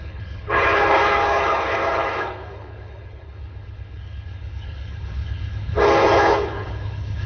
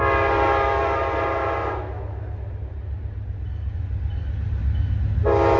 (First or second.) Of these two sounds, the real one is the second